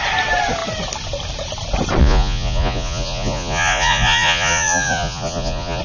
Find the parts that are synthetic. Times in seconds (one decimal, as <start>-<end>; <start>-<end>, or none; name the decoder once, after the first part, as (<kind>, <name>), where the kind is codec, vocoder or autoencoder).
2.0-5.8 (vocoder, Vocos)